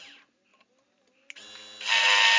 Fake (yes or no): no